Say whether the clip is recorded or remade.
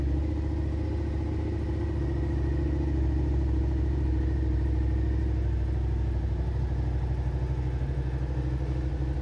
recorded